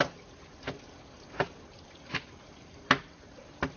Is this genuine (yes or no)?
yes